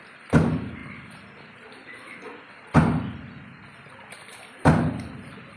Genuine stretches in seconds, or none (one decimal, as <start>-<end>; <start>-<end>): 0.0-0.8; 2.5-5.6